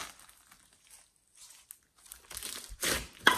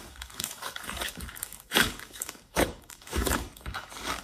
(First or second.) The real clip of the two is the first